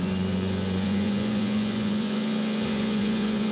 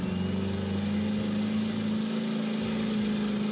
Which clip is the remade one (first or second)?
first